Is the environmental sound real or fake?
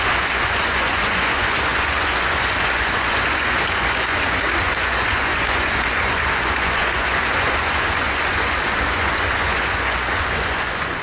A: fake